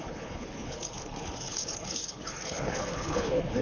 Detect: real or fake fake